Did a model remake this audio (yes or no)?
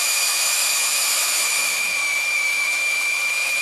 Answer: yes